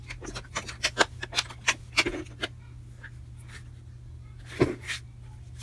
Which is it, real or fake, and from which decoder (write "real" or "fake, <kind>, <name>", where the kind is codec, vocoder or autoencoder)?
real